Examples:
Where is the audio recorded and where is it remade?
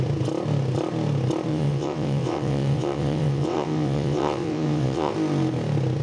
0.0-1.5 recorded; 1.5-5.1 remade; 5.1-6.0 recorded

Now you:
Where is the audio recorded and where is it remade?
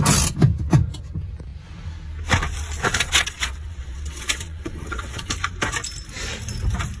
0.0-2.9 recorded; 2.9-5.3 remade; 5.3-7.0 recorded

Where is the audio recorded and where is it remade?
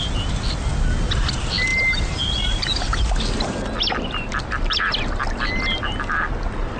0.0-6.8 recorded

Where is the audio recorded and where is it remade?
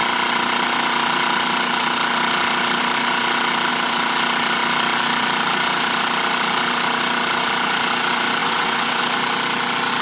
0.0-8.4 recorded; 8.4-9.0 remade; 9.0-10.0 recorded